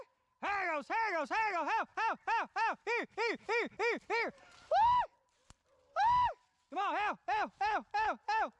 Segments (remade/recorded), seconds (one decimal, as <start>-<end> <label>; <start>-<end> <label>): 0.0-8.6 recorded